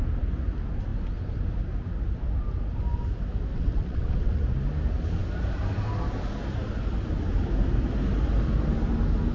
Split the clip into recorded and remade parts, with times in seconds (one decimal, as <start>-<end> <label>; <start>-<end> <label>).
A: 0.0-3.5 recorded; 3.5-4.4 remade; 4.4-9.3 recorded